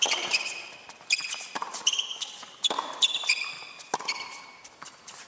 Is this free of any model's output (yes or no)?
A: yes